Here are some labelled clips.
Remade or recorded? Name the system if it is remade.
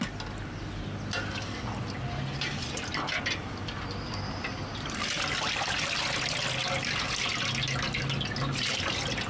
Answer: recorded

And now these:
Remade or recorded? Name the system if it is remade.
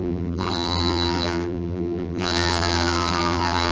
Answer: remade, vocoder, BigVGAN v2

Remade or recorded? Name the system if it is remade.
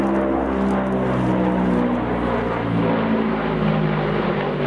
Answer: recorded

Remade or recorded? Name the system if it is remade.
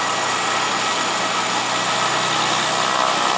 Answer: recorded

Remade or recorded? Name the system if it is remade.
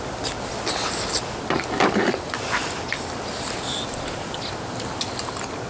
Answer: recorded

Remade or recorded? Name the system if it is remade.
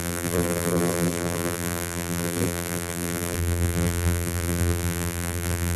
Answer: remade, vocoder, BigVGAN v2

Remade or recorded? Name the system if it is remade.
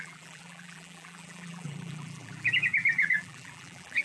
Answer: remade, vocoder, BigVGAN v2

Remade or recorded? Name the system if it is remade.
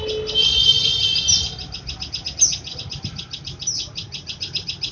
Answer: recorded